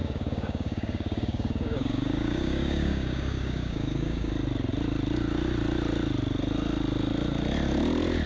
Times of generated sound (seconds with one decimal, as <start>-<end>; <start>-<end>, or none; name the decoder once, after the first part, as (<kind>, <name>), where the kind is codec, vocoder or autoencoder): 0.0-4.3 (codec, DAC)

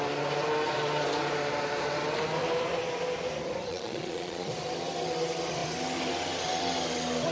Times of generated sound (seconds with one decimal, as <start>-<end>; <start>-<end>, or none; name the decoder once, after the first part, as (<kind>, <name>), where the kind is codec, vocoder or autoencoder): 3.7-4.5 (vocoder, Vocos)

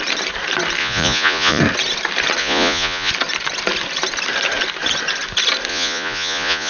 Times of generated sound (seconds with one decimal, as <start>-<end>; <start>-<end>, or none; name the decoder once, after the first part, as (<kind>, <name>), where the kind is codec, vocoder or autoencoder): 0.8-1.6 (vocoder, Vocos); 2.4-3.1; 5.7-6.7

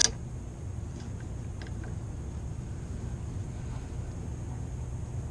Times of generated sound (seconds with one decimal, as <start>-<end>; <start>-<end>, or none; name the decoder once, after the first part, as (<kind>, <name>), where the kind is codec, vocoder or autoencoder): none

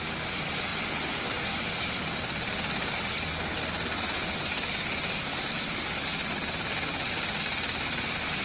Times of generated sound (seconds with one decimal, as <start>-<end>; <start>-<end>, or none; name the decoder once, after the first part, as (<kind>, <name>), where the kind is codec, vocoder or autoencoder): none

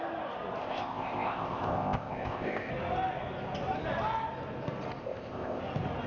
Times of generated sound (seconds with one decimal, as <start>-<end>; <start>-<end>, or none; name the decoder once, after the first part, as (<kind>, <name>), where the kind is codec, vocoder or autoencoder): 0.6-2.7 (codec, ZipCodec); 5.0-5.6

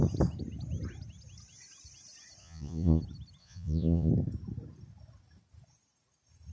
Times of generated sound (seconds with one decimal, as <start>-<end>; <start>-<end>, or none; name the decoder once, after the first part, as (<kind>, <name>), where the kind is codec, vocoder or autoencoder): 2.4-3.0 (vocoder, Vocos); 3.4-4.1

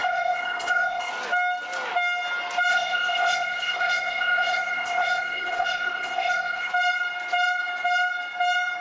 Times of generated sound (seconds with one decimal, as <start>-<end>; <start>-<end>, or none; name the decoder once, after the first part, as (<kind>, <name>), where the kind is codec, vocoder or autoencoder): 0.0-1.1 (codec, ZipCodec); 2.7-6.7